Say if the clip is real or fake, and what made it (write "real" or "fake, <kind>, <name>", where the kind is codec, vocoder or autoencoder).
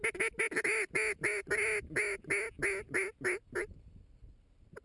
real